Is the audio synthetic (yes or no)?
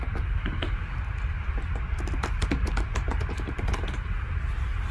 no